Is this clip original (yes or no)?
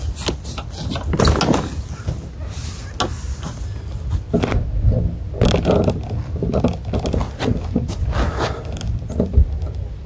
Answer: yes